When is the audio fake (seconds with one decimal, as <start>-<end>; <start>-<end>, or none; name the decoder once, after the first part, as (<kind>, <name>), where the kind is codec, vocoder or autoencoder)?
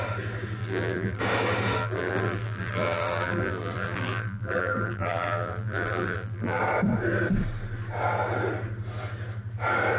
0.6-1.2 (vocoder, BigVGAN v2); 1.8-6.6